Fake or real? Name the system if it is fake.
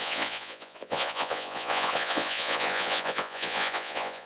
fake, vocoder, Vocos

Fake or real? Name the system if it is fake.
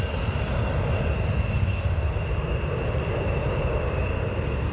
real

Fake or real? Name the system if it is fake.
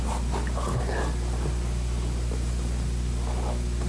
real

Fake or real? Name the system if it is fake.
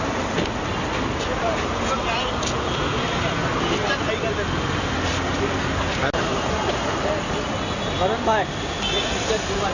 real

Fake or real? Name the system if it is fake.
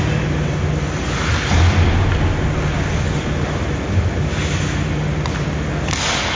real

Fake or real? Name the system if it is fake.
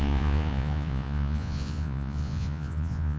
fake, vocoder, Vocos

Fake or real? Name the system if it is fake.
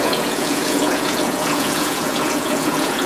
fake, vocoder, Vocos